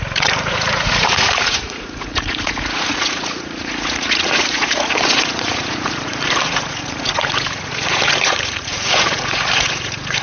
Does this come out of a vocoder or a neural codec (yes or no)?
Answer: yes